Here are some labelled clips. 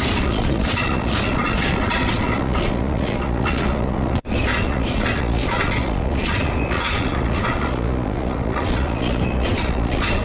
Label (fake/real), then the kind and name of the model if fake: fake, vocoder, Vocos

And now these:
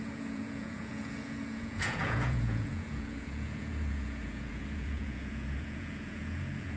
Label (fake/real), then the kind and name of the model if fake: fake, vocoder, Vocos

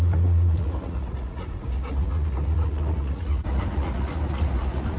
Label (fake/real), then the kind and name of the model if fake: fake, vocoder, Vocos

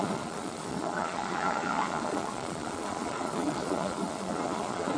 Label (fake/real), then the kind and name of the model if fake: fake, vocoder, Vocos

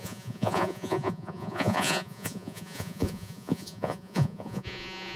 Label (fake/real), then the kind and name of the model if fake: fake, vocoder, Vocos